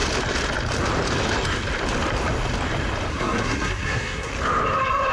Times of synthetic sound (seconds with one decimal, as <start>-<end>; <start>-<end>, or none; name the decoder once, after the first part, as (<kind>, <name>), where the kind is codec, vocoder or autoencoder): 3.1-4.3 (codec, SNAC)

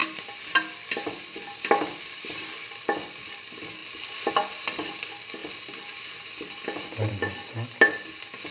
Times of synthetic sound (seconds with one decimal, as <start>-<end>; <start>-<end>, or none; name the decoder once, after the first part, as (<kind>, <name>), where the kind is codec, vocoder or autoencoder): none

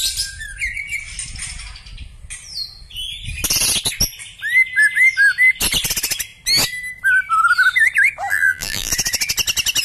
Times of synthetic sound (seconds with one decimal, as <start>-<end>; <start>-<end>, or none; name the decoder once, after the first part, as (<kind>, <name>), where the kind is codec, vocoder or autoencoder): 8.3-8.9 (vocoder, BigVGAN v2)

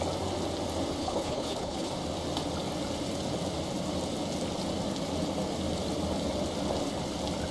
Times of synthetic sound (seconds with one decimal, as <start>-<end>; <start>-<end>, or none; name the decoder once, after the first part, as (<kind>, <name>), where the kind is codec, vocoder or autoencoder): 1.0-1.9 (codec, HILCodec)

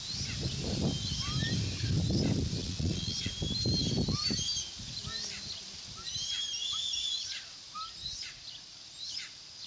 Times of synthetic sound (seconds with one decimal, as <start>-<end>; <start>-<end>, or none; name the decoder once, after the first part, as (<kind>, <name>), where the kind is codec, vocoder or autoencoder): 2.6-3.3 (vocoder, Vocos)

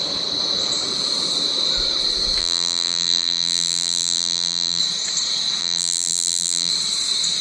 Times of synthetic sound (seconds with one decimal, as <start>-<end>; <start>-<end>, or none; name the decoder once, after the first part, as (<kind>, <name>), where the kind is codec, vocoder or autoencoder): 2.4-4.8 (vocoder, BigVGAN v2); 5.6-6.7

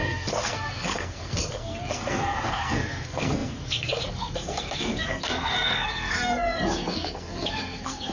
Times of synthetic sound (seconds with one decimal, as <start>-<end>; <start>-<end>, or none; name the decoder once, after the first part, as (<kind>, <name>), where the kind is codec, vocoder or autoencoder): 0.0-8.1 (codec, SNAC)